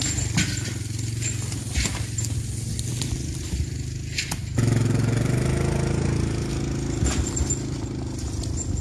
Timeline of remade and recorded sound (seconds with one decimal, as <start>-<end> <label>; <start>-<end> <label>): 0.0-8.8 recorded